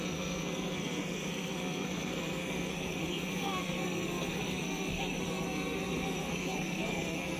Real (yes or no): no